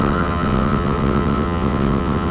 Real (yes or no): no